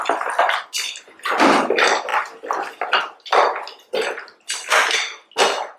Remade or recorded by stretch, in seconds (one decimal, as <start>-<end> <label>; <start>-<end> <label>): 0.0-5.8 recorded